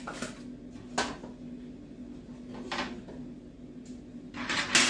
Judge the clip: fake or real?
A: real